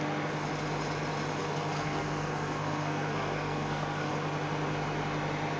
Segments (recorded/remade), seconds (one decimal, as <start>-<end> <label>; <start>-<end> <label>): 0.0-1.4 recorded; 1.4-4.1 remade; 4.1-5.6 recorded